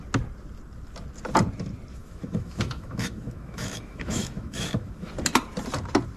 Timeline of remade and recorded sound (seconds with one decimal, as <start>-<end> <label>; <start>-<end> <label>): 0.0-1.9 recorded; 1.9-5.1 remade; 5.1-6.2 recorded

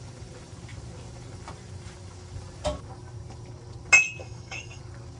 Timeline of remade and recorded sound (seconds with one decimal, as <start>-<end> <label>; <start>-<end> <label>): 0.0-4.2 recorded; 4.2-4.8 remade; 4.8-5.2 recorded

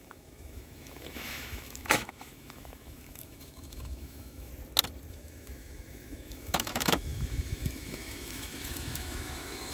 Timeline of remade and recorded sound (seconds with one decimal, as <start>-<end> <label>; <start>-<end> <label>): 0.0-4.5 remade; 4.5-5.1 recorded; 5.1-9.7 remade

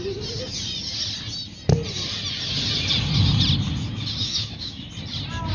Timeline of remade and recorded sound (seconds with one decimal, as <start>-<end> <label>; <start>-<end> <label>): 0.0-4.2 recorded; 4.2-4.8 remade; 4.8-5.5 recorded